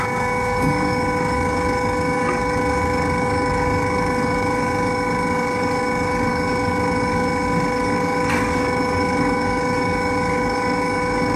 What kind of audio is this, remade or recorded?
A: remade